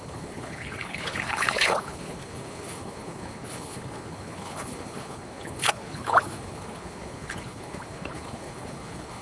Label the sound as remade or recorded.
remade